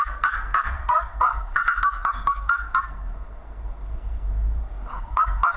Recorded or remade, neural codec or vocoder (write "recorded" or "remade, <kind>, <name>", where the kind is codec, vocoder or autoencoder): remade, codec, SNAC